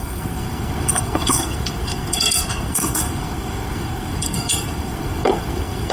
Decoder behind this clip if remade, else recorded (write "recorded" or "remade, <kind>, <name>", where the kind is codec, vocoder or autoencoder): remade, codec, SNAC